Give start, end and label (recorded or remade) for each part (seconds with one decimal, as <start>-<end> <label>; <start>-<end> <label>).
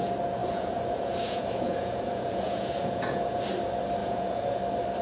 0.0-0.4 recorded; 0.4-3.4 remade; 3.4-4.0 recorded; 4.0-4.6 remade; 4.6-5.0 recorded